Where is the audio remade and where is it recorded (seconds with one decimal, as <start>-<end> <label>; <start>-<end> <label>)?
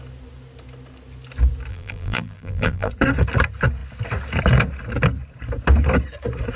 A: 0.0-1.7 recorded; 1.7-2.9 remade; 2.9-6.6 recorded